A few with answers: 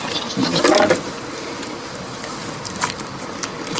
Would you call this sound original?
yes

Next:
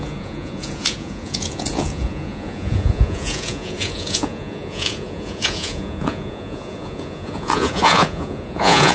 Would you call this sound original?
no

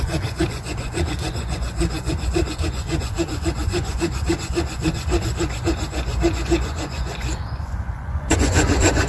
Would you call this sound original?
no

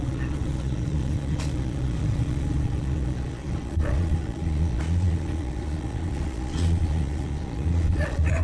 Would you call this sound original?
no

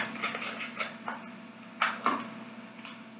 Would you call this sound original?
yes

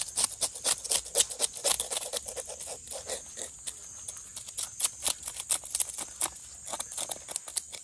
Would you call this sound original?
yes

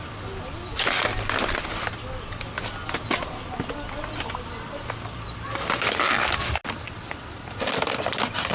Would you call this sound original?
yes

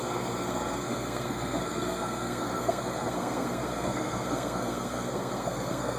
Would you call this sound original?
no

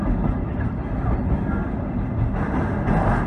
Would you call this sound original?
yes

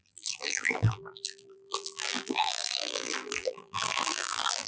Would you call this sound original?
no